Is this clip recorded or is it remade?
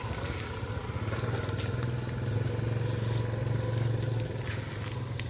recorded